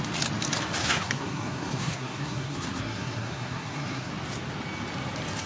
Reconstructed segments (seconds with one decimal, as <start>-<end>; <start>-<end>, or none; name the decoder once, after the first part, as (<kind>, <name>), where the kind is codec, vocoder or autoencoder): 0.8-4.1 (codec, SNAC)